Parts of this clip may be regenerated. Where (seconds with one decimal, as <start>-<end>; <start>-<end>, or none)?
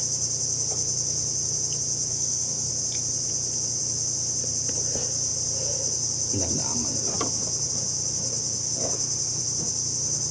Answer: 2.1-2.7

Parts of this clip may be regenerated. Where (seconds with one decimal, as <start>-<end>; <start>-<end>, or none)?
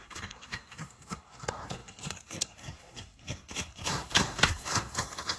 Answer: 0.0-5.4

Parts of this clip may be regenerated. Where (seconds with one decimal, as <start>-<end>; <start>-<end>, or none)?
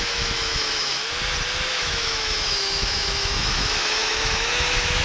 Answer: 0.0-1.0; 1.7-5.0